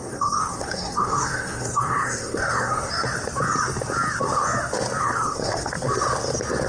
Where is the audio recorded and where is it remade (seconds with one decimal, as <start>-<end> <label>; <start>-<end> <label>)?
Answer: 0.0-2.9 remade; 2.9-5.0 recorded; 5.0-5.7 remade; 5.7-6.7 recorded